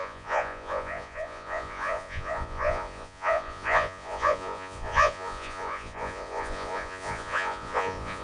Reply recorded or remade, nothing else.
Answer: remade